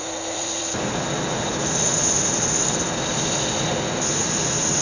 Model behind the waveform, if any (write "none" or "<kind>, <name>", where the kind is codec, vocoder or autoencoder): vocoder, BigVGAN v2